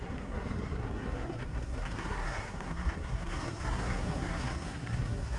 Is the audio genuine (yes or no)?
no